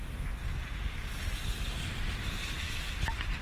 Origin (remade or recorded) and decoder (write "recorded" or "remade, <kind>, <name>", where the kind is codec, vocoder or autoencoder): recorded